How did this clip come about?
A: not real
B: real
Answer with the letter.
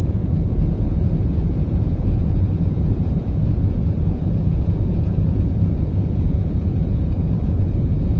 A